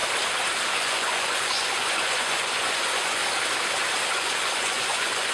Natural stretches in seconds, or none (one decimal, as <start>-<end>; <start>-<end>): 0.0-0.7; 3.2-4.1